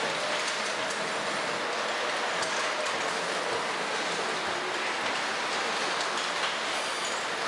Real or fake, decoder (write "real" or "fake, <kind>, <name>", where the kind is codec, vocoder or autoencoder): real